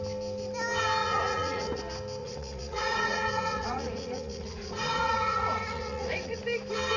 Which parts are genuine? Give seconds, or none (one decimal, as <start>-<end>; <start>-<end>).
0.0-1.0; 1.8-2.2; 6.4-7.0